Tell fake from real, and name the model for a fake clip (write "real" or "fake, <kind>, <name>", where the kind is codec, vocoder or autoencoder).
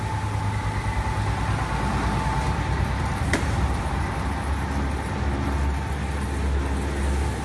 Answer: real